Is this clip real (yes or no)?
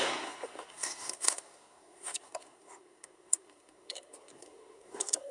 no